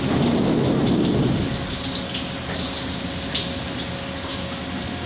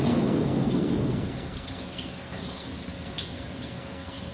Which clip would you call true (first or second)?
first